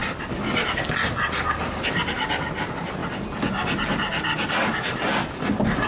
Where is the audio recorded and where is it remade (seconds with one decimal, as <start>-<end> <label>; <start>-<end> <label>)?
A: 0.0-5.9 recorded